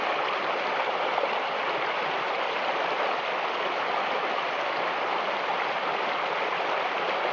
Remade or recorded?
recorded